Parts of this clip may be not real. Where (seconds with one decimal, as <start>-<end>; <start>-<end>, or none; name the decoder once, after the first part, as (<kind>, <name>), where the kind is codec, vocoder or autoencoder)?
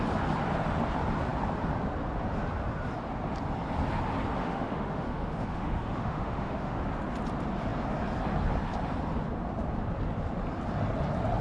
4.4-6.8 (autoencoder, DAC-VAE)